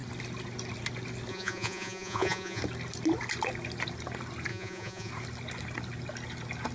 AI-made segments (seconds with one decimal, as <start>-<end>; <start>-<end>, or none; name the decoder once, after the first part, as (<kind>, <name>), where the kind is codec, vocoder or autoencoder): 1.3-2.6 (vocoder, Vocos); 4.5-5.1